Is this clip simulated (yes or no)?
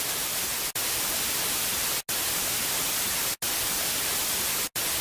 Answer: no